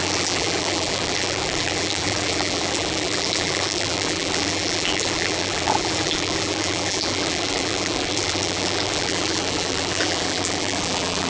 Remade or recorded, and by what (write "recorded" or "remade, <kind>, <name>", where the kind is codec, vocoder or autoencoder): remade, vocoder, BigVGAN v2